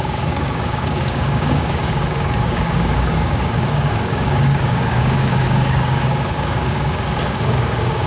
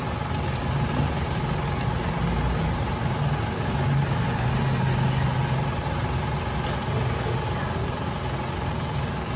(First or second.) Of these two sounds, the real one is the second